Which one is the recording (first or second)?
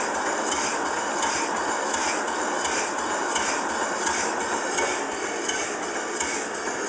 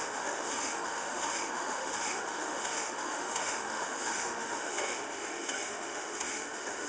first